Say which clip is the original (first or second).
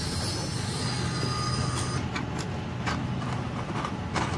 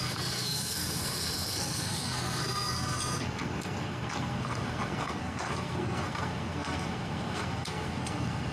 first